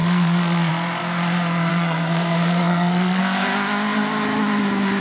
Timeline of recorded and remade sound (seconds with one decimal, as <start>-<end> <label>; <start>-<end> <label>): 0.0-0.7 remade; 0.7-1.7 recorded; 1.7-3.2 remade; 3.2-5.0 recorded